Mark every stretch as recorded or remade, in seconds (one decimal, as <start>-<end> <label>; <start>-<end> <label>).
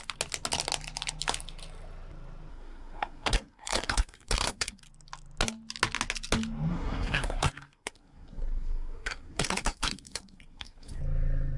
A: 0.0-2.5 recorded; 2.5-4.8 remade; 4.8-6.7 recorded; 6.7-11.0 remade; 11.0-11.6 recorded